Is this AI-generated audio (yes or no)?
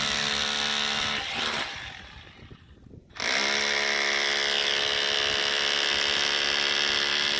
no